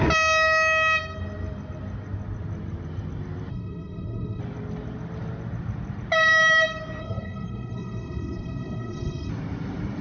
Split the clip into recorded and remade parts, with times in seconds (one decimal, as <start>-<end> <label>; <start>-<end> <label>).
0.0-3.5 recorded; 3.5-4.4 remade; 4.4-7.0 recorded; 7.0-9.3 remade; 9.3-10.0 recorded